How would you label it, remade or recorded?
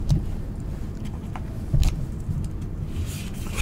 remade